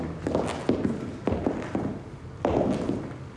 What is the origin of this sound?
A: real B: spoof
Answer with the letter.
A